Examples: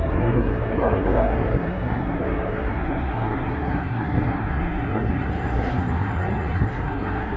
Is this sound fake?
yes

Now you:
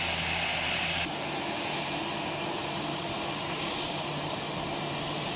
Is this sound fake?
no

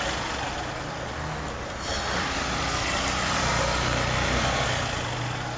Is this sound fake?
no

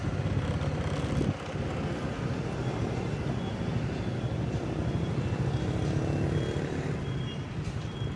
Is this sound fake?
no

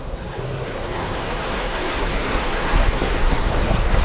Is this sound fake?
yes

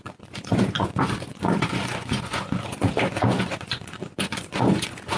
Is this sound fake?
yes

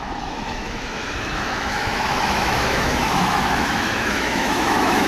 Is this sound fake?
yes